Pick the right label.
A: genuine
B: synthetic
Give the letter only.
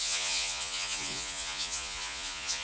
B